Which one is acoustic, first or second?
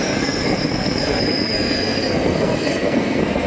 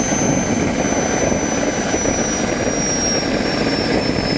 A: second